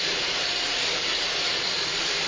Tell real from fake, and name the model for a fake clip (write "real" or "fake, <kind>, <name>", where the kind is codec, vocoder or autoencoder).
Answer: fake, vocoder, BigVGAN v2